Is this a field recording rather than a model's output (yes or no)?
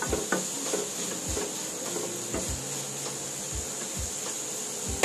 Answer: yes